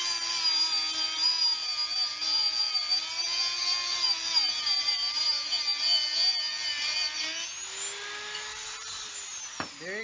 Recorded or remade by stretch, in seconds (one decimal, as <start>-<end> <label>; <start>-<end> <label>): 0.0-10.0 recorded